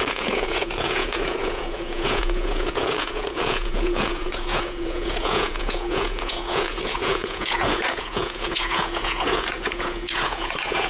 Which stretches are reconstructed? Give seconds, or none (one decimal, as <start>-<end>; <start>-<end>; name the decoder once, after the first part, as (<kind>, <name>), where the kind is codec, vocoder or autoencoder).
0.0-10.9 (vocoder, Vocos)